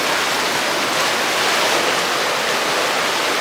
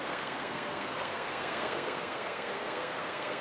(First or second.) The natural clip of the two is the first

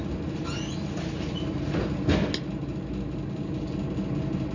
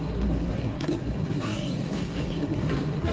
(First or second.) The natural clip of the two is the first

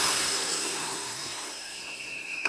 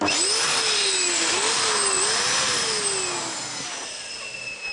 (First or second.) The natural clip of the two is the second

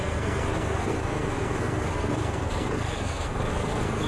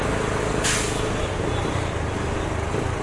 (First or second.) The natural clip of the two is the second